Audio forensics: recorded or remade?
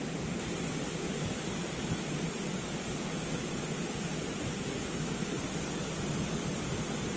recorded